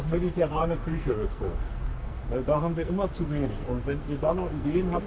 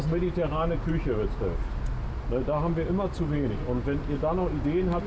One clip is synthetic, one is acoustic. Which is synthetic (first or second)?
first